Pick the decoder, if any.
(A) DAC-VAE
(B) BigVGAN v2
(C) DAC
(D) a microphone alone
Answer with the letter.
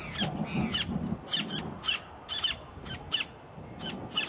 B